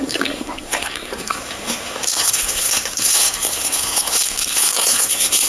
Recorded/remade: remade